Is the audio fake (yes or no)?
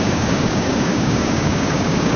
yes